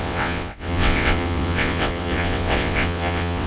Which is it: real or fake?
fake